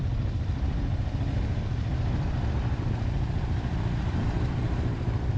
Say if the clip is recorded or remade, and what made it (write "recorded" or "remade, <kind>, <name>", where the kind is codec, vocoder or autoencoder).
remade, vocoder, BigVGAN v2